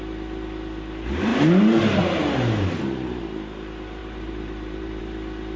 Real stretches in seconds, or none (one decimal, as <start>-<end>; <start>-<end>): 0.0-1.3; 3.2-4.0; 5.0-5.6